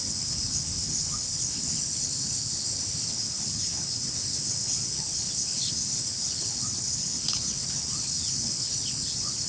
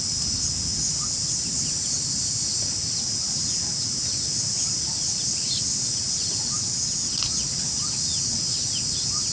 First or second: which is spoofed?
first